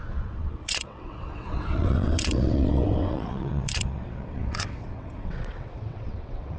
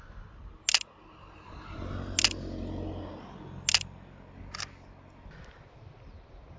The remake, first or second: first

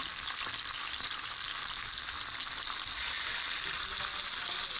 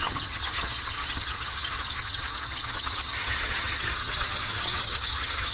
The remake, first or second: second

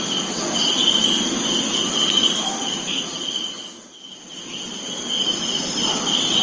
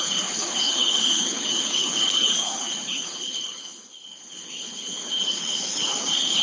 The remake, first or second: second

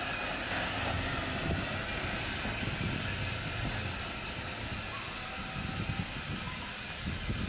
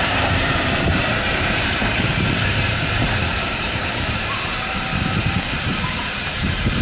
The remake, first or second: second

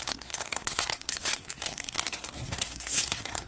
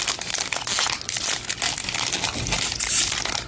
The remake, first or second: first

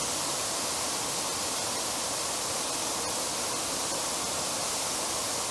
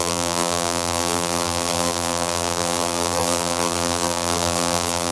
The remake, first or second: second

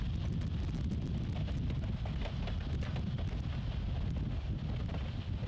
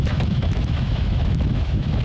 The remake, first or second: second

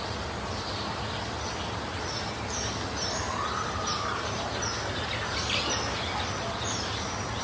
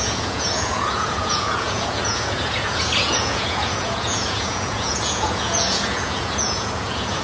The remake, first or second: second